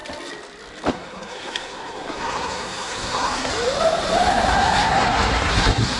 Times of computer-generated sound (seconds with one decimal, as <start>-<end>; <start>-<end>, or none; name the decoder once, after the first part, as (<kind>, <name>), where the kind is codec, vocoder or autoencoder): 0.9-3.5 (codec, SNAC); 4.3-6.0